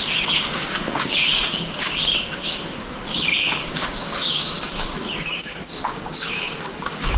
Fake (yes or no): yes